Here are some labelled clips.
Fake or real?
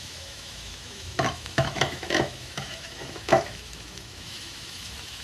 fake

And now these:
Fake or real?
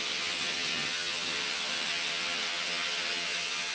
fake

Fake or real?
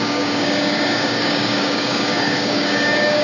fake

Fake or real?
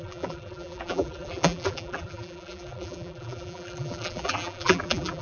fake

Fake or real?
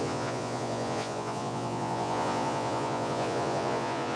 fake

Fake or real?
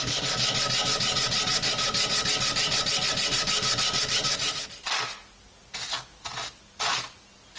real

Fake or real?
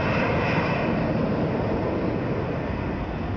real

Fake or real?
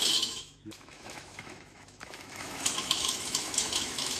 fake